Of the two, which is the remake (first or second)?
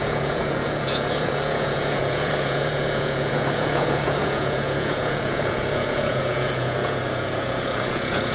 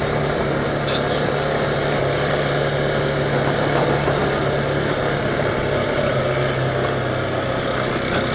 first